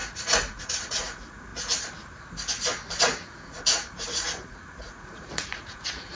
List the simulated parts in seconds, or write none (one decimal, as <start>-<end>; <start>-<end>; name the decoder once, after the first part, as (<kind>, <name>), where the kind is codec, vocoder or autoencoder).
0.0-1.5 (vocoder, Vocos); 3.0-6.1